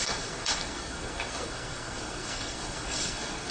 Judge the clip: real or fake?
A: fake